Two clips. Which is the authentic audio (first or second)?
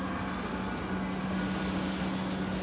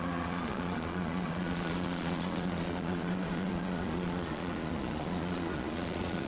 first